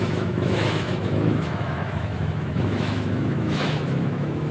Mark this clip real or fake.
fake